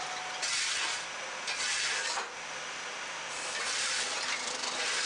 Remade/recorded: remade